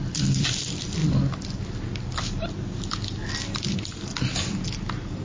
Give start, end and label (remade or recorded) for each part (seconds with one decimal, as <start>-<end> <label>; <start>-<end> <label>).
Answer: 0.0-5.2 recorded